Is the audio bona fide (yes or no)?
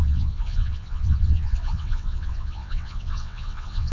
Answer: no